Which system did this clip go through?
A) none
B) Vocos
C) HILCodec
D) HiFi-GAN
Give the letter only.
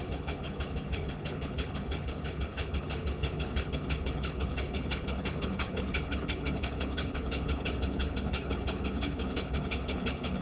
C